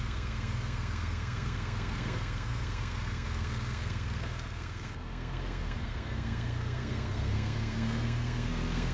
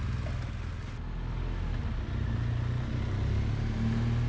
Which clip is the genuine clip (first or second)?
second